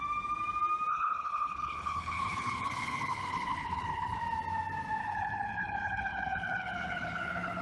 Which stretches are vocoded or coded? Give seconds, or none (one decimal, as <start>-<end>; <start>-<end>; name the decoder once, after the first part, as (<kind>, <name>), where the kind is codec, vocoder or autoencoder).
0.9-4.2 (codec, HILCodec); 5.0-7.6